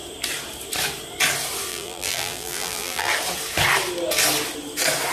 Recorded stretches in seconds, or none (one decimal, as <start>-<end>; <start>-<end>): 0.0-1.7; 3.1-5.1